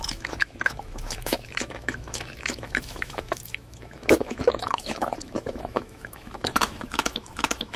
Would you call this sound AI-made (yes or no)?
yes